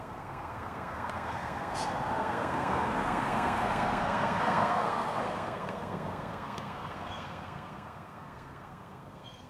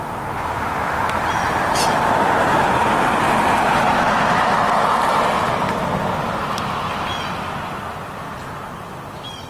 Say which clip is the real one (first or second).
second